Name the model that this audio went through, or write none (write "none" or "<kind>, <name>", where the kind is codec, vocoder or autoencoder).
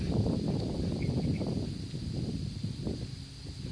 none